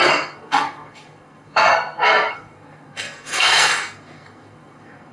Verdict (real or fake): fake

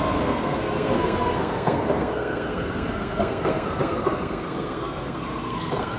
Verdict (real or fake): fake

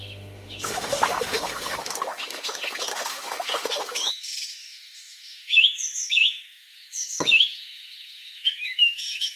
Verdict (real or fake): fake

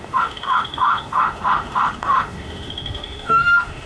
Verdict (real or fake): fake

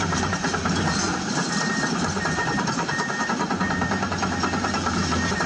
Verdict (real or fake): fake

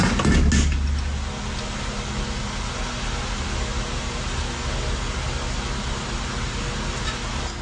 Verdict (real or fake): real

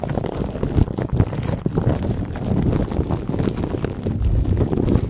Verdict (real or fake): real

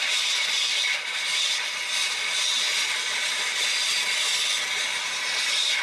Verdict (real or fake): real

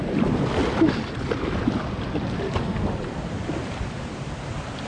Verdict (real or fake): real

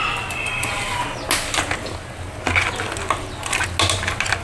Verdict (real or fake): real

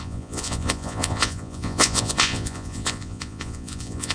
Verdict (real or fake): fake